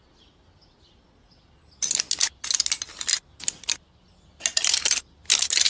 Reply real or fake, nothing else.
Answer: real